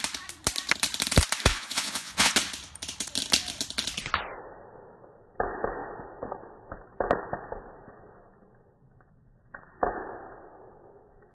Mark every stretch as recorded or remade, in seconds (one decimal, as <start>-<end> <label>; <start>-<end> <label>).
0.0-1.5 recorded; 1.5-2.3 remade; 2.3-11.3 recorded